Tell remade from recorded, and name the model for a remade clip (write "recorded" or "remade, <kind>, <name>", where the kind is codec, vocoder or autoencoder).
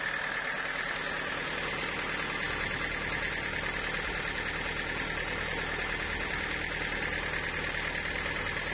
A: recorded